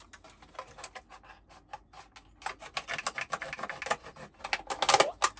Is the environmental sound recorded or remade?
recorded